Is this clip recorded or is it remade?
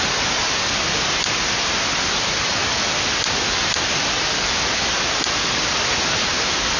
recorded